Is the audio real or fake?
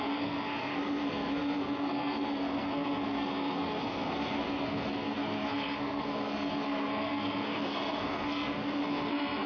fake